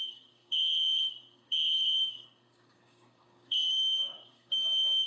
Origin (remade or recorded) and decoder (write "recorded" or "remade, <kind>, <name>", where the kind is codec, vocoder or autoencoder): remade, codec, DAC